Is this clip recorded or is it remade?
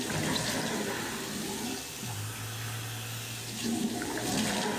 recorded